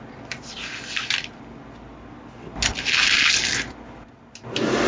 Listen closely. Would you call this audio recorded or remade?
recorded